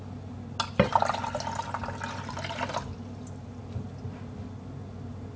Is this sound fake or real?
real